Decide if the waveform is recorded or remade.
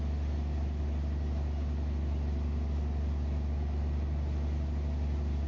recorded